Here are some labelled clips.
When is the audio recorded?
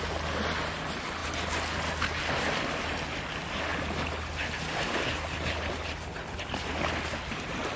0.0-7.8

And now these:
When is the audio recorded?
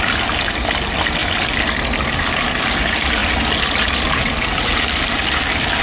0.0-5.8